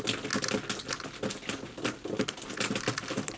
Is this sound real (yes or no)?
yes